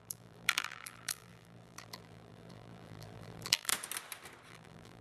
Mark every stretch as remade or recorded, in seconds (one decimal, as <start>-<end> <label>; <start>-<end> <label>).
0.0-3.7 remade; 3.7-4.5 recorded; 4.5-5.0 remade